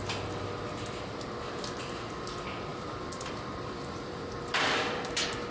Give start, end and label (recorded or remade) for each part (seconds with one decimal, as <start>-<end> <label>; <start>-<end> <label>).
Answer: 0.0-2.7 recorded; 2.7-5.5 remade